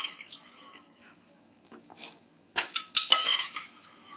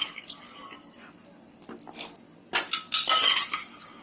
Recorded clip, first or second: second